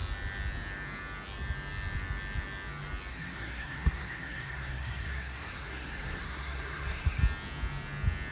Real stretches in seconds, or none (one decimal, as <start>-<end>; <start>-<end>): 0.0-3.1; 7.2-8.3